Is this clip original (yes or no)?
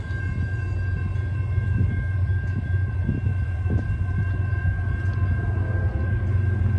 yes